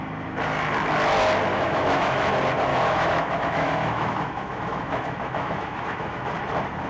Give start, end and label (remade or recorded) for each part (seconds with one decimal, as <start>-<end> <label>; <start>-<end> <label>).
0.0-1.5 recorded; 1.5-2.3 remade; 2.3-2.7 recorded; 2.7-6.3 remade; 6.3-6.9 recorded